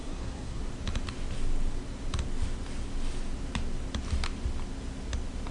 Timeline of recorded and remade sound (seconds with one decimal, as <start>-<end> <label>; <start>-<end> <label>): 0.0-0.6 remade; 0.6-5.5 recorded